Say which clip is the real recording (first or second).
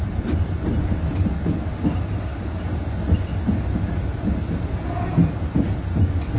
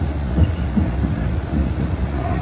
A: first